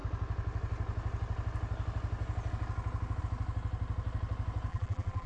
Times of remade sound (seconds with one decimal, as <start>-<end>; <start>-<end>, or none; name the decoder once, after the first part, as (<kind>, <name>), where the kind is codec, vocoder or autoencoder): 4.7-5.3 (vocoder, BigVGAN v2)